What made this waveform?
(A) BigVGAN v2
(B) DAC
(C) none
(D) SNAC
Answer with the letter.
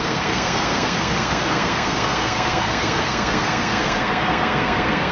D